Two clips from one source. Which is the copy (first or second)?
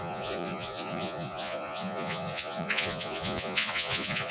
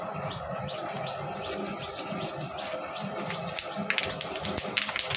first